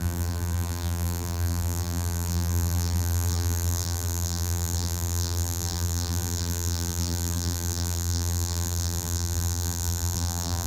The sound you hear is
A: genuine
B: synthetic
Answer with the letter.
B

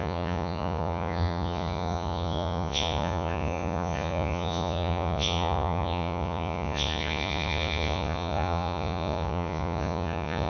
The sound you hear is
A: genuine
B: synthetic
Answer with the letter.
B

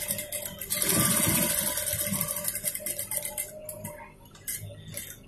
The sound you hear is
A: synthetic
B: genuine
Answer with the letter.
B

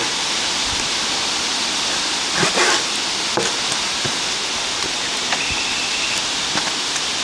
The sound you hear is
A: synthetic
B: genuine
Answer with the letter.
B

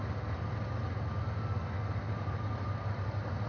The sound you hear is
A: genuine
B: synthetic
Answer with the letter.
A